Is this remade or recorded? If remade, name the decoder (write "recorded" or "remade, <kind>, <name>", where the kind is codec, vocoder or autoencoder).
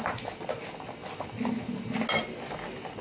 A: recorded